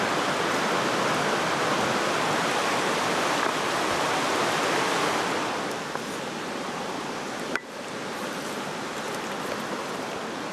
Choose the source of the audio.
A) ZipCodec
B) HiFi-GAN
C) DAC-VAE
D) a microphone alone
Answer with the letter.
D